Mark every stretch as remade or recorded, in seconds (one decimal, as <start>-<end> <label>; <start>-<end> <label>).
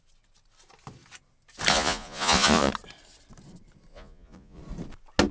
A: 0.0-1.7 recorded; 1.7-2.7 remade; 2.7-3.9 recorded; 3.9-4.6 remade; 4.6-5.3 recorded